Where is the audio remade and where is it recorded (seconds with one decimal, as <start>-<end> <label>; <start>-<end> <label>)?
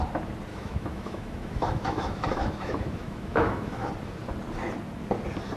0.0-0.5 recorded; 0.5-3.9 remade; 3.9-5.6 recorded